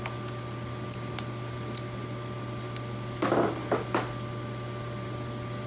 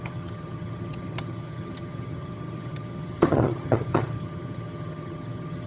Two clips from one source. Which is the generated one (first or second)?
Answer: second